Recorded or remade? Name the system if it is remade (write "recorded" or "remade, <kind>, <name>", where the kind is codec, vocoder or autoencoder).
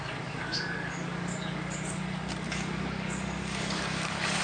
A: remade, codec, DAC